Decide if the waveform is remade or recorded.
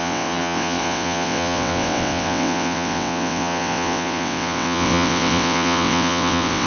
remade